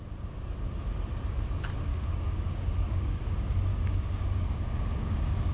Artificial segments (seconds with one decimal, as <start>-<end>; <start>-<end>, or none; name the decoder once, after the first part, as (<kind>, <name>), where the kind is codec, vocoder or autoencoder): 1.9-3.2 (codec, DAC); 3.7-5.5